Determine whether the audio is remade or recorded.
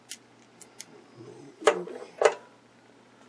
recorded